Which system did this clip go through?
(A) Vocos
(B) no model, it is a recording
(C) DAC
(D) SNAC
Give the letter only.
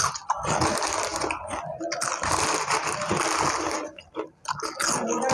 B